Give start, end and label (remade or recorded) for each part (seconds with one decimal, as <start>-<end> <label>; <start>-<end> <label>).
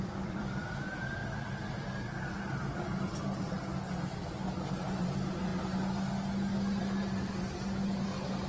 0.0-1.2 remade; 1.2-4.7 recorded; 4.7-5.5 remade; 5.5-6.8 recorded; 6.8-8.5 remade